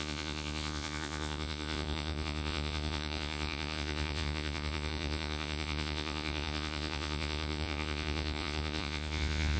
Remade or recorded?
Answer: remade